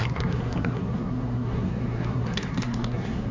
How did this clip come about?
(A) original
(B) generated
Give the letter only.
B